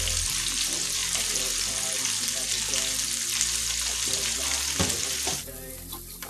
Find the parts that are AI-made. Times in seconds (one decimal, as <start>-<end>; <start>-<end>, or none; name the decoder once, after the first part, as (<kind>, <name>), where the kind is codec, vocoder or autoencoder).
none